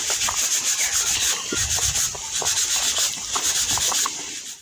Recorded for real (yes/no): yes